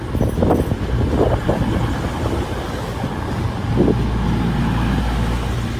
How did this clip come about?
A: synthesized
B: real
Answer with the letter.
B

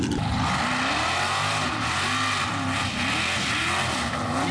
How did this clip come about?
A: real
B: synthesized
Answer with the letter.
A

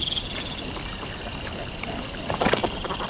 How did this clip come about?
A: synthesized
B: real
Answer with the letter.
B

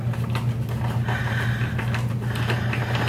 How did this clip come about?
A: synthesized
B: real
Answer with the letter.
B